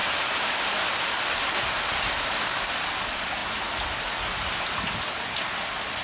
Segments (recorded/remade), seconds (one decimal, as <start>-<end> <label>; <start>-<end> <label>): 0.0-6.0 recorded